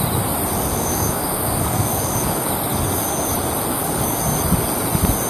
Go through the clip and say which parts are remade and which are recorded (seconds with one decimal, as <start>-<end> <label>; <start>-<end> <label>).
0.0-0.7 recorded; 0.7-2.5 remade; 2.5-3.7 recorded; 3.7-4.2 remade; 4.2-5.3 recorded